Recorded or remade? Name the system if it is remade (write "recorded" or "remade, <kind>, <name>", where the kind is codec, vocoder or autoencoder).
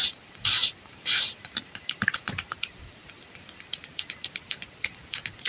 remade, vocoder, BigVGAN v2